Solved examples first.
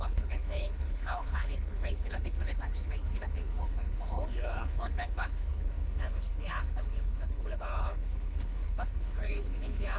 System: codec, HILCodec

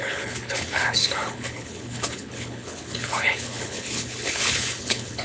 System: codec, HILCodec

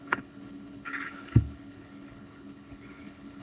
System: codec, HILCodec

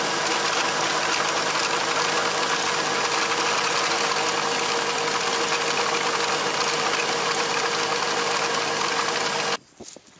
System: none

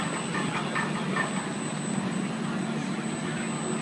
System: none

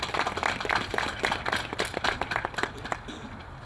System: none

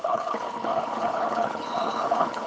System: codec, HILCodec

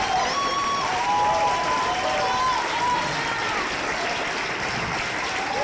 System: none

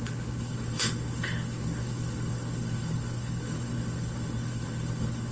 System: codec, HILCodec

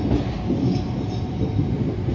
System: none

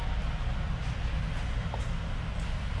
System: none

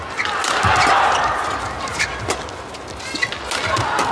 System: none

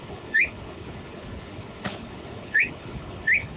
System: codec, HILCodec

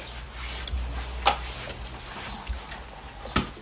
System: none